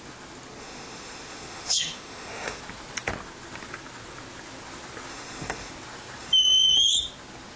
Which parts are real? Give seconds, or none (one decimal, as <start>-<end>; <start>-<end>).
0.0-0.6; 2.6-5.1; 5.7-6.2; 6.7-7.6